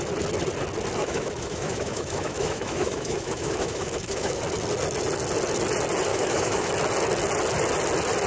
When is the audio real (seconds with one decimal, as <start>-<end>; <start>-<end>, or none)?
0.0-1.0; 4.4-6.1; 6.7-8.3